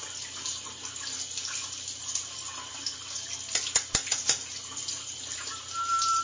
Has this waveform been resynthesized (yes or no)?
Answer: no